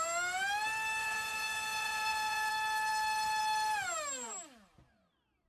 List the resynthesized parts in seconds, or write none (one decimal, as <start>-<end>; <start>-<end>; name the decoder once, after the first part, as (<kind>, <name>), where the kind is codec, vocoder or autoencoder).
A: 1.0-2.5 (vocoder, Vocos)